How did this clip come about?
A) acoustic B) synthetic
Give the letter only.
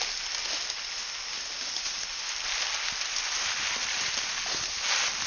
A